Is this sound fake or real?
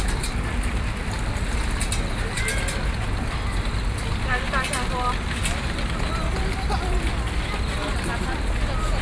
real